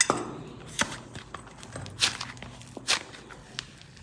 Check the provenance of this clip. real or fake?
real